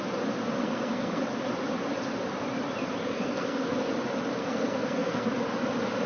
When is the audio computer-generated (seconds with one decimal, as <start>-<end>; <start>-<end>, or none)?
0.6-1.2; 3.0-3.7; 4.4-5.3